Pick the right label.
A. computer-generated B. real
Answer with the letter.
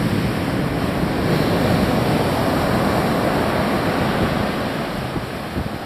B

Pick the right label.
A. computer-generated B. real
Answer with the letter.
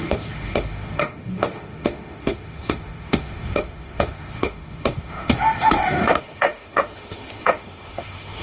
A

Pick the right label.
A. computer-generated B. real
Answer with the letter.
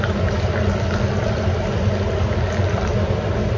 B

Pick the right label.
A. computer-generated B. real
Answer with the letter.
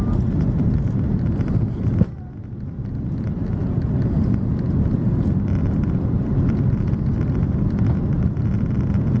B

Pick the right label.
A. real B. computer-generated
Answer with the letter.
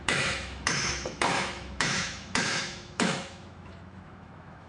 B